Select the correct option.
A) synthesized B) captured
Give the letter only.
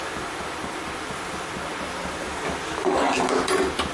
B